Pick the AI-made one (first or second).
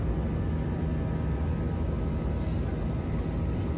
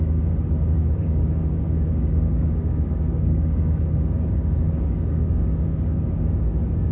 second